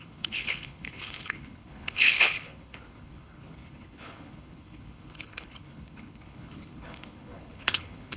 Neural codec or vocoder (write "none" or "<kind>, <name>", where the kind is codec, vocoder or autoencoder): codec, HILCodec